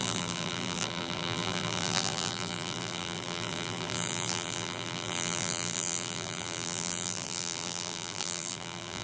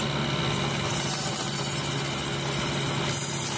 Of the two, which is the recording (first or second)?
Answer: second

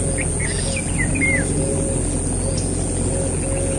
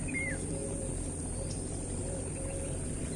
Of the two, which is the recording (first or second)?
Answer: first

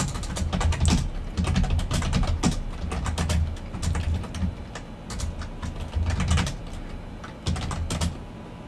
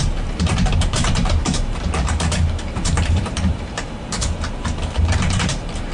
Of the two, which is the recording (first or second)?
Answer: first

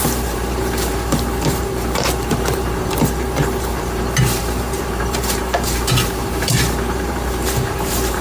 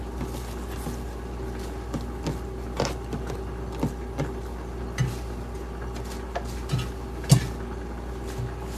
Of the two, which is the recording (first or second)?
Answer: second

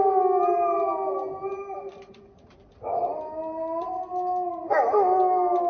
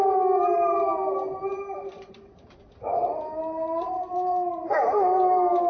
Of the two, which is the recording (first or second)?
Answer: first